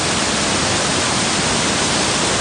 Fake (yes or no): no